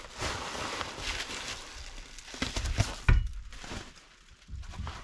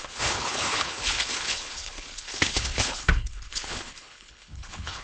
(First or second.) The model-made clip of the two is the second